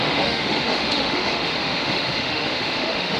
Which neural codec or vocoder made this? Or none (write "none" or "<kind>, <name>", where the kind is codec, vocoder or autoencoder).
autoencoder, DAC-VAE